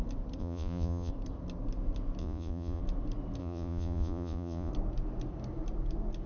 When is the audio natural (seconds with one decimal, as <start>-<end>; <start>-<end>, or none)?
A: 0.0-0.4; 1.1-2.2; 2.8-3.4; 4.7-6.3